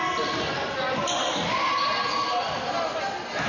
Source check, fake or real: real